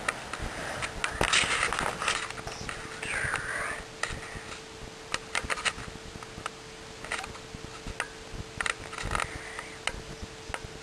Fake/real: real